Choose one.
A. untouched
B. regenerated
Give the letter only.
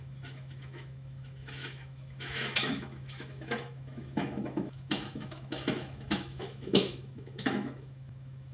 B